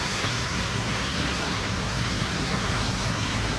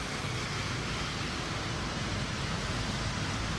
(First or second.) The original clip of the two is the second